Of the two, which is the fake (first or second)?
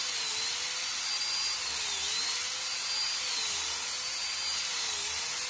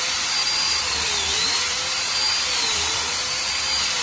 second